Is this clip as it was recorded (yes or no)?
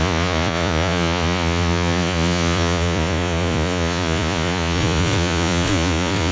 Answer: no